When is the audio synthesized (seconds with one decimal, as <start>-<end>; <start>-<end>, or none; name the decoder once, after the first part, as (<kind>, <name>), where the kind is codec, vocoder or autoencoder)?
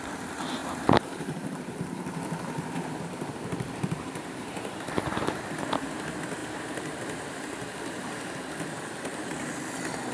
0.6-5.2 (vocoder, BigVGAN v2); 6.4-8.3